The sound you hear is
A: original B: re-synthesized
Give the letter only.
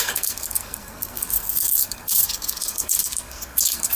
B